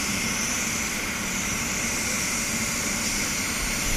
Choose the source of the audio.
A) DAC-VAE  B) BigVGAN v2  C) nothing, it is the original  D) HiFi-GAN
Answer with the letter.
B